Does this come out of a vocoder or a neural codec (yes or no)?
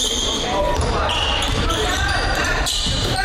yes